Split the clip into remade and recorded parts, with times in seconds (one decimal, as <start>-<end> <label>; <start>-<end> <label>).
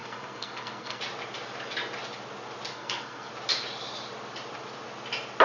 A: 0.0-1.0 remade; 1.0-2.7 recorded; 2.7-3.3 remade; 3.3-5.4 recorded